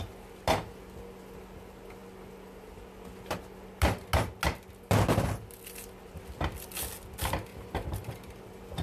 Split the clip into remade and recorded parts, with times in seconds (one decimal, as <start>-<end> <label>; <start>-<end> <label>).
0.0-7.5 recorded; 7.5-8.1 remade; 8.1-8.8 recorded